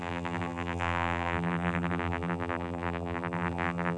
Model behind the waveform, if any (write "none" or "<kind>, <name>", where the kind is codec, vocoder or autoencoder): vocoder, BigVGAN v2